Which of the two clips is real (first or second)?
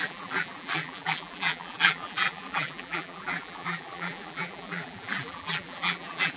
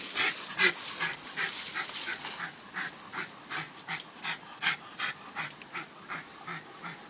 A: second